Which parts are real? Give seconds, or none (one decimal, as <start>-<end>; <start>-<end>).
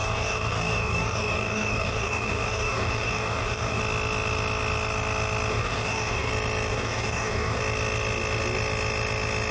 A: 3.8-5.5; 6.3-6.7; 7.6-9.5